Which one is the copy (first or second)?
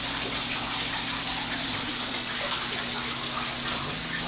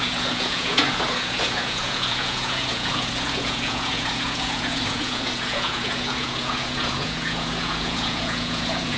second